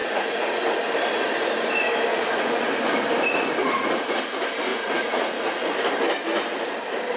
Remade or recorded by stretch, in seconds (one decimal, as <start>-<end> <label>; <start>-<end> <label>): 0.0-0.6 remade; 0.6-2.1 recorded; 2.1-2.7 remade; 2.7-3.6 recorded; 3.6-4.2 remade; 4.2-4.7 recorded; 4.7-5.7 remade; 5.7-7.2 recorded